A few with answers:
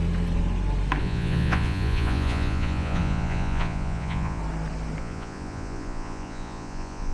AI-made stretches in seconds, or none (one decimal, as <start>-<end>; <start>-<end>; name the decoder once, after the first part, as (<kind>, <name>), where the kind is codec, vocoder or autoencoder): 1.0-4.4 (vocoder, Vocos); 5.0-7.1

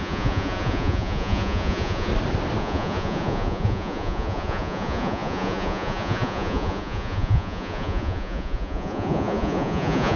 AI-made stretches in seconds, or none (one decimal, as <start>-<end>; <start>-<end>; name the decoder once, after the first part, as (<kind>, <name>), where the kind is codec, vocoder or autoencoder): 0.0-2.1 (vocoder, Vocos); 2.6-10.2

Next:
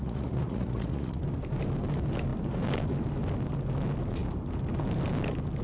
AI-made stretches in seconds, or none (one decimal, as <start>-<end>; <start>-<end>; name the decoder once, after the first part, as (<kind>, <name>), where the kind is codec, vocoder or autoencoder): 0.0-1.2 (vocoder, Vocos)

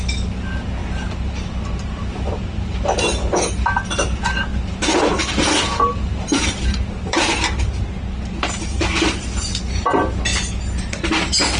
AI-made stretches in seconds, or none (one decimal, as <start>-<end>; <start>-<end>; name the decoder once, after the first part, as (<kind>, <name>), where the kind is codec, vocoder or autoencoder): 0.8-3.4 (vocoder, BigVGAN v2); 4.5-9.5

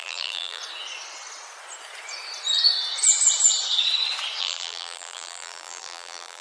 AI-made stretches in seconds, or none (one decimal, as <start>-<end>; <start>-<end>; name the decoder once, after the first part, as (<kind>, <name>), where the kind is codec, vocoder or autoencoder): 0.0-0.6 (vocoder, BigVGAN v2); 4.4-6.4

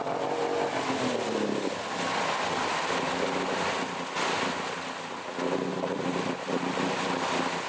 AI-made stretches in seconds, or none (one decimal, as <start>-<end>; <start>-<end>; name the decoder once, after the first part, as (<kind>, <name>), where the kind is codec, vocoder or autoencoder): 5.7-7.2 (vocoder, BigVGAN v2)

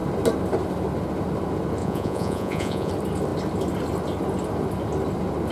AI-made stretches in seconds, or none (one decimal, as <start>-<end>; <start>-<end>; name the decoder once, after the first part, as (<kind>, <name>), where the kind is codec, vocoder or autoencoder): 1.8-2.9 (vocoder, Vocos)